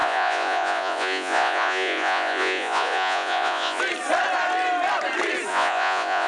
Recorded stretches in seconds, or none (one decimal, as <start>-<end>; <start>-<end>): 3.8-5.5